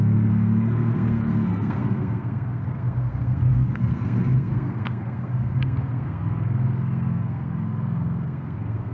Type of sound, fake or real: fake